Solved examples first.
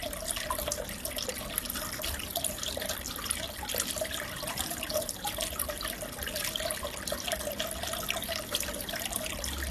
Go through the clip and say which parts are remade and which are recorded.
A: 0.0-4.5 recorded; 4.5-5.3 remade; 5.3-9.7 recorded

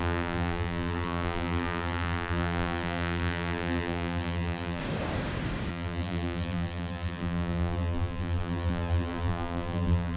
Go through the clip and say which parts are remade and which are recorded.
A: 0.0-4.8 remade; 4.8-5.7 recorded; 5.7-10.2 remade

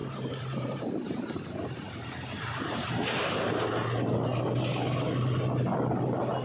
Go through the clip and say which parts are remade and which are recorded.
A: 0.0-3.5 remade; 3.5-6.4 recorded

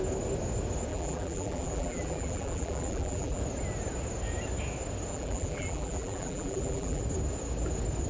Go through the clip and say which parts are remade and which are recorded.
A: 0.0-0.9 recorded; 0.9-3.4 remade; 3.4-5.1 recorded; 5.1-7.0 remade; 7.0-8.1 recorded

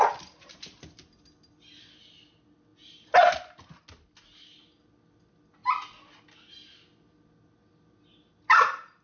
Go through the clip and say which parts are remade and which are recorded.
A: 0.0-9.0 recorded

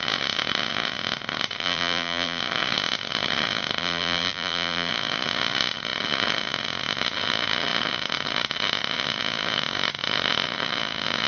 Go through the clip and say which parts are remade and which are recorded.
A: 0.0-1.6 recorded; 1.6-2.4 remade; 2.4-3.8 recorded; 3.8-4.9 remade; 4.9-11.3 recorded

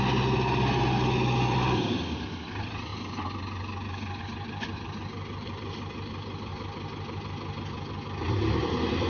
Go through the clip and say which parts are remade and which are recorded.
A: 0.0-2.9 remade; 2.9-4.2 recorded; 4.2-6.5 remade; 6.5-8.3 recorded; 8.3-9.1 remade